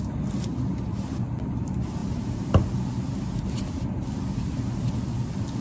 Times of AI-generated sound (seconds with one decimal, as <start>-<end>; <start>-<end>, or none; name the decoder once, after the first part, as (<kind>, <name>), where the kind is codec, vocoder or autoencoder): none